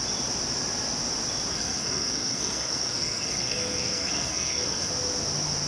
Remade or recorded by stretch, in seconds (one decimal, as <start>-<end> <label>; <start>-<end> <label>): 0.0-1.5 recorded; 1.5-4.9 remade; 4.9-5.7 recorded